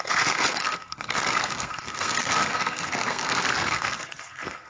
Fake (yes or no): yes